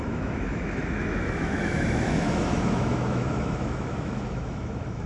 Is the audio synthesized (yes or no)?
yes